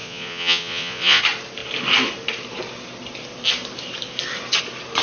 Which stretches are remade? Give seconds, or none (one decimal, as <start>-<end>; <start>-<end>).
0.0-1.2